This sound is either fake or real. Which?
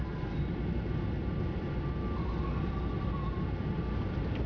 real